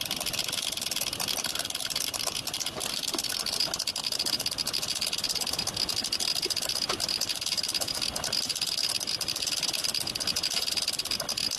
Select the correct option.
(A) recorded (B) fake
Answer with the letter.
A